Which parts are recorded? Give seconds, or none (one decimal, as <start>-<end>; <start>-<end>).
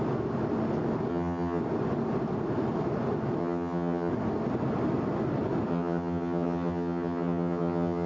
0.0-1.1; 1.6-3.4; 4.1-5.7